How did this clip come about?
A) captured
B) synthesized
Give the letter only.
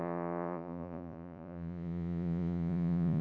B